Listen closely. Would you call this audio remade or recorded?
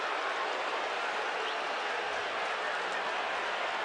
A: remade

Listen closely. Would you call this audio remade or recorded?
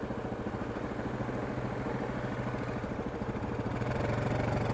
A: recorded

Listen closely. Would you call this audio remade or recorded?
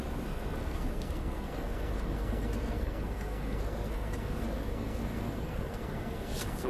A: remade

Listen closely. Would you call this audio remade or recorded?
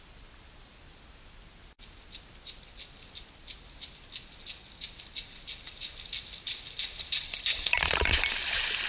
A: recorded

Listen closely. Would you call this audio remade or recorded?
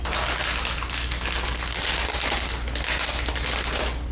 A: recorded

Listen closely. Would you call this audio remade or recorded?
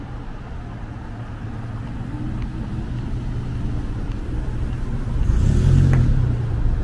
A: recorded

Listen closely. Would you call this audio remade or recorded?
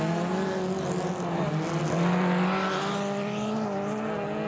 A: recorded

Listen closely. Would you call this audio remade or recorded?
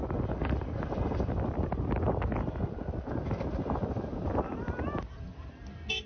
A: recorded